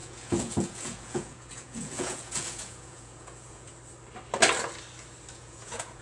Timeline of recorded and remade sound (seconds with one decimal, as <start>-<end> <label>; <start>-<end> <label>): 0.0-3.7 remade; 3.7-5.3 recorded; 5.3-6.0 remade